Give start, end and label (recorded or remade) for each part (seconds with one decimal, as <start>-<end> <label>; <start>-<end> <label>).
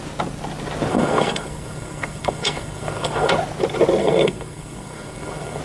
0.0-0.9 recorded; 0.9-3.3 remade; 3.3-4.0 recorded; 4.0-5.6 remade